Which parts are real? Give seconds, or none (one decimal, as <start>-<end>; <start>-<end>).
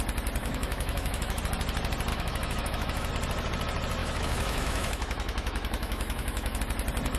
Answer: 0.0-0.4; 1.4-2.1; 3.1-4.0; 6.6-7.2